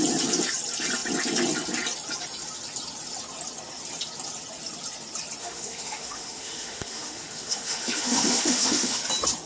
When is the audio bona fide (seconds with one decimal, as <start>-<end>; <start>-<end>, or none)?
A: 0.0-5.4; 9.0-9.5